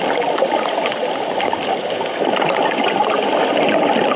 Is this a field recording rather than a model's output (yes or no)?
yes